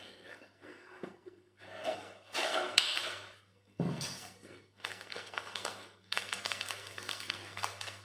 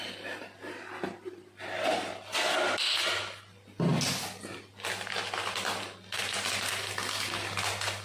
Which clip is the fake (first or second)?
first